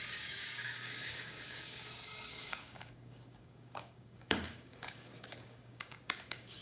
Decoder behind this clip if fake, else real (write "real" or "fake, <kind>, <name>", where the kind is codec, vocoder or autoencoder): fake, codec, DAC